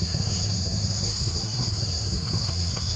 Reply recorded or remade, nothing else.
remade